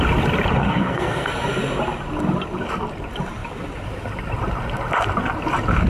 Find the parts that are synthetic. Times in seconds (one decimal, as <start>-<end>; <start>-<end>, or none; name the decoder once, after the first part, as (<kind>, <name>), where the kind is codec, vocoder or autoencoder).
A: 0.6-1.3 (codec, SNAC)